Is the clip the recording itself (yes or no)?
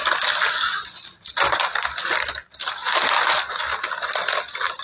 yes